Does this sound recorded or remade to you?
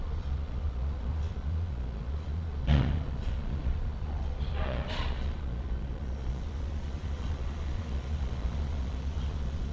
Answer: remade